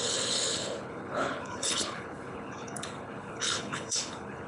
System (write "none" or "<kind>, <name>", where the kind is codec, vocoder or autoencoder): codec, HILCodec